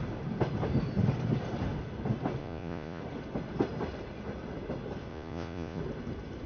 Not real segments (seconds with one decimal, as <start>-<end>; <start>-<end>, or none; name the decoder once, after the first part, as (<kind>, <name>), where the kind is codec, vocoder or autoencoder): 2.4-3.0 (vocoder, Vocos); 5.1-5.8

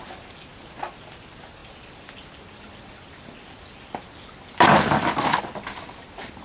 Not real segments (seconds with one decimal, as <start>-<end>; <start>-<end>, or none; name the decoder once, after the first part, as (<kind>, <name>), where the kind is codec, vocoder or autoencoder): none

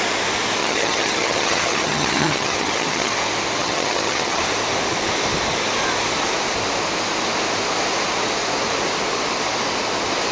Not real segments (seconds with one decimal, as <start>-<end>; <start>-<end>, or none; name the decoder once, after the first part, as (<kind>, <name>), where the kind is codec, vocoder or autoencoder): 0.6-3.1 (vocoder, HiFi-GAN); 3.6-4.4

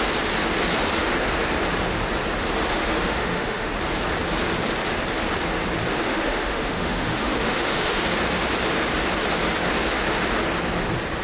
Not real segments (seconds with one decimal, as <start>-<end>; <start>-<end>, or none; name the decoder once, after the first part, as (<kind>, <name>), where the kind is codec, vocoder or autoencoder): 2.7-3.7 (autoencoder, DAC-VAE); 6.0-8.0

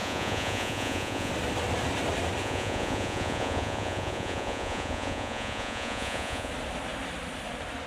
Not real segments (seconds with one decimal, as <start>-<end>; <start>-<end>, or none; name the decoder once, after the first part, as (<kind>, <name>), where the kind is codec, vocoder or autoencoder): 0.0-1.3 (vocoder, Vocos); 2.4-6.5

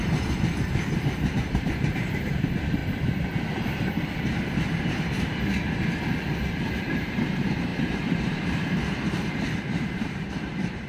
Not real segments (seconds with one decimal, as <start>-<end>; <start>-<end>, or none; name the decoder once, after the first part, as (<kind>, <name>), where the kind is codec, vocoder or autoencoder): 0.0-2.8 (vocoder, BigVGAN v2); 4.2-5.5; 6.6-10.9

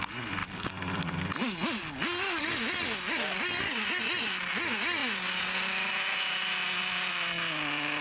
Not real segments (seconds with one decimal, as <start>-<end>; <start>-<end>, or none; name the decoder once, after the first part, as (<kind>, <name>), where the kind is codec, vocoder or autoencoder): none

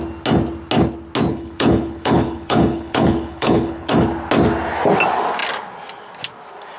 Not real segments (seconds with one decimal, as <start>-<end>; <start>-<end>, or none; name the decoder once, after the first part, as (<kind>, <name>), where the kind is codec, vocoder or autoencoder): 1.3-3.9 (codec, HILCodec)